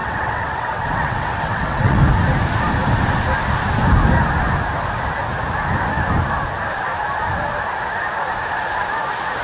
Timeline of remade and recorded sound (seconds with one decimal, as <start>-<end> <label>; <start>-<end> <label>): 0.0-2.0 remade; 2.0-9.4 recorded

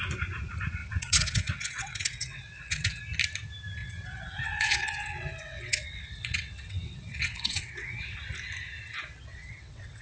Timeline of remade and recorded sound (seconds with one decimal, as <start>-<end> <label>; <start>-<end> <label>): 0.0-0.8 recorded; 0.8-3.0 remade; 3.0-3.8 recorded; 3.8-8.2 remade; 8.2-9.3 recorded; 9.3-10.0 remade

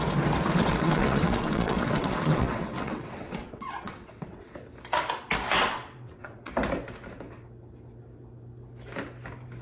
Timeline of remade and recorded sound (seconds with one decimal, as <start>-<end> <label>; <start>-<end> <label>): 0.0-0.6 recorded; 0.6-4.4 remade; 4.4-5.6 recorded; 5.6-6.5 remade; 6.5-9.6 recorded

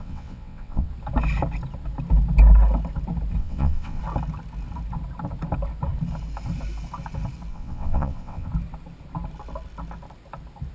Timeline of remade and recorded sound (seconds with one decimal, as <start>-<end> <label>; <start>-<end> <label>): 0.0-0.9 remade; 0.9-3.4 recorded; 3.4-4.0 remade; 4.0-7.5 recorded; 7.5-8.5 remade; 8.5-10.7 recorded